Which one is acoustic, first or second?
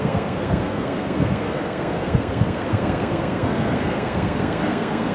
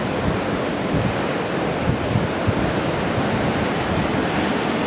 second